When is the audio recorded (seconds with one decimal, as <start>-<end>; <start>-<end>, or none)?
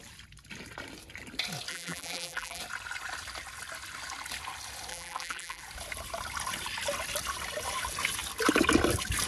0.0-1.7; 2.6-4.9; 5.6-9.3